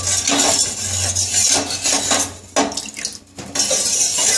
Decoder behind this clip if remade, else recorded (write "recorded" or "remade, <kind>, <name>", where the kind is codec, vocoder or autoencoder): recorded